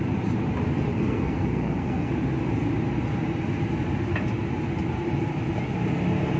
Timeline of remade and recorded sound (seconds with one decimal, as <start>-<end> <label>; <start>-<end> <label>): 0.0-0.9 recorded; 0.9-2.1 remade; 2.1-6.4 recorded